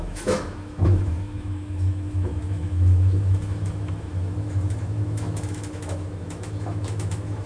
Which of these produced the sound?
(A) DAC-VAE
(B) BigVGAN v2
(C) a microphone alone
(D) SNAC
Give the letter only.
A